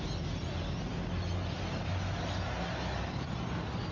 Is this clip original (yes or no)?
yes